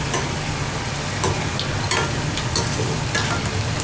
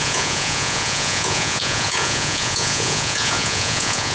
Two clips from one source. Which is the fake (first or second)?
second